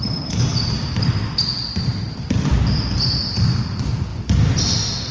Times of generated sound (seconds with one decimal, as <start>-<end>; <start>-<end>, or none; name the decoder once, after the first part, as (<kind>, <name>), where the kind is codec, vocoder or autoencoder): 0.5-3.6 (vocoder, BigVGAN v2); 4.1-5.1